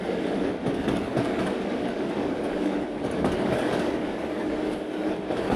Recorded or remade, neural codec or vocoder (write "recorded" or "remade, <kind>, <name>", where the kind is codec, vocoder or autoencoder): remade, codec, DAC